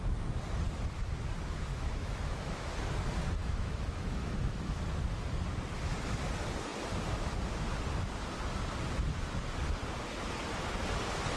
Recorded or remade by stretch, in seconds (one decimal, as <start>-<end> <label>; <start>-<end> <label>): 0.0-1.7 recorded; 1.7-2.7 remade; 2.7-3.4 recorded; 3.4-4.8 remade; 4.8-11.4 recorded